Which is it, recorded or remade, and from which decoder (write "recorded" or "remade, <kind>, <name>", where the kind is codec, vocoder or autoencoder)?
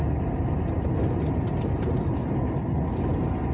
recorded